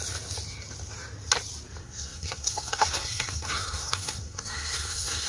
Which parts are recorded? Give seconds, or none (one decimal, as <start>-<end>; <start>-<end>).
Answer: 0.0-1.8